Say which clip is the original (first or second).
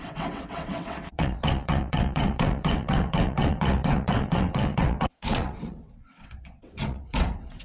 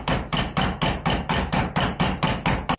second